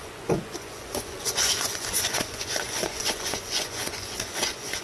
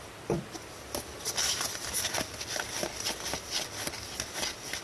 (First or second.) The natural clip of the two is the second